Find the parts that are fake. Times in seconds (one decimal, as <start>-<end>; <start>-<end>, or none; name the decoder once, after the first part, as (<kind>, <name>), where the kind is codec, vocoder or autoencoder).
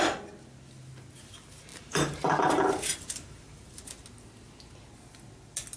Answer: 1.7-3.8 (vocoder, BigVGAN v2)